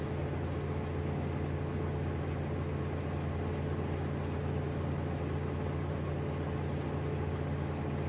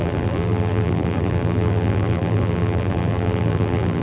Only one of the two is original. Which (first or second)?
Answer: first